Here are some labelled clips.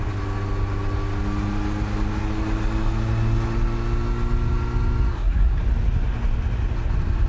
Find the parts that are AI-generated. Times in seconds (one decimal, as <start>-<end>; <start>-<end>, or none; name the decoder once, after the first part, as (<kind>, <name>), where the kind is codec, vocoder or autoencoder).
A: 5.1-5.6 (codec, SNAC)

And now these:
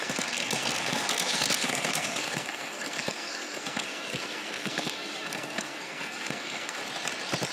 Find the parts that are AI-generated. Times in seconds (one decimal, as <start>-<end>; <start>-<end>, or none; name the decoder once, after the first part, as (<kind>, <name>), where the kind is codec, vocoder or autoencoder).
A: 0.0-6.8 (codec, SNAC)

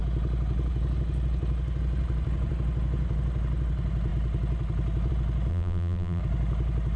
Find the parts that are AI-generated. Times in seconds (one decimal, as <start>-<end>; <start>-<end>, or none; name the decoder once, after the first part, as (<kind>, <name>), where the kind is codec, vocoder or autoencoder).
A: 5.5-6.2 (vocoder, BigVGAN v2)

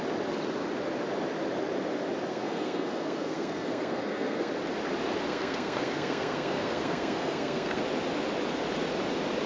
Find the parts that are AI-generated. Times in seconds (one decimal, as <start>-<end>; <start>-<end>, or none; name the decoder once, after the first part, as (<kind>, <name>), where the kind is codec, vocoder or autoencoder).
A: 2.3-4.5 (codec, SNAC); 5.3-7.8

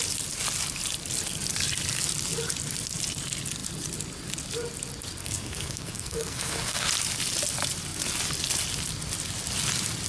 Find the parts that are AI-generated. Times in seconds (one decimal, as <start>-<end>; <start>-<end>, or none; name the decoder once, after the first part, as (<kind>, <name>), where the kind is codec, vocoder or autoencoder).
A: 5.2-6.9 (codec, SNAC)

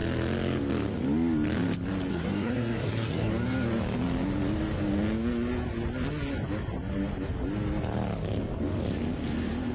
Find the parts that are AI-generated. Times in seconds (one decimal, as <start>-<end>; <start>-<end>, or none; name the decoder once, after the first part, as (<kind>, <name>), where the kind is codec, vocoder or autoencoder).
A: 2.1-3.3 (codec, SNAC)

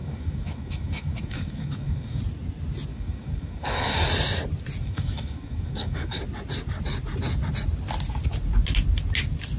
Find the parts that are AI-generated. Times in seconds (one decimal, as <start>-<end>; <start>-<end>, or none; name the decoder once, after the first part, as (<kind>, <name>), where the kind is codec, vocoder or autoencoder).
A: 0.0-2.2 (codec, DAC); 2.9-4.1; 4.8-6.2